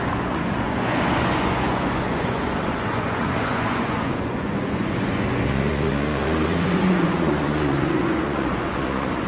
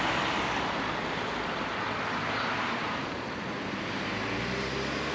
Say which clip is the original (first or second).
second